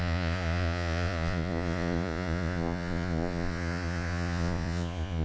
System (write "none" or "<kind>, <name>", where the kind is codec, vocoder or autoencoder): vocoder, Vocos